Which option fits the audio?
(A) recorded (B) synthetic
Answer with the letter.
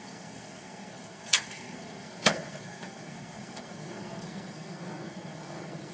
B